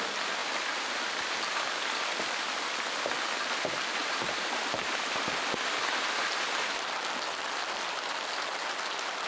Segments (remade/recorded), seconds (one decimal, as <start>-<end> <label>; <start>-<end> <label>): 0.0-0.4 recorded; 0.4-1.3 remade; 1.3-4.0 recorded; 4.0-5.3 remade; 5.3-9.3 recorded